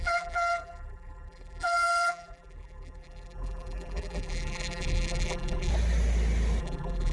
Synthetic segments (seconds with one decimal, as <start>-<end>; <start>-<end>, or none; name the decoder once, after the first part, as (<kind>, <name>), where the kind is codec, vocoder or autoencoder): 0.0-5.7 (vocoder, BigVGAN v2); 6.6-7.1